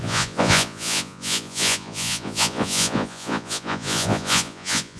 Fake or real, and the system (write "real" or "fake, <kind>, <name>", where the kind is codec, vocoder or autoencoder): fake, vocoder, Vocos